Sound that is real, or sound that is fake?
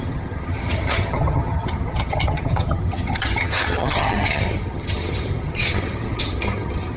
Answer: fake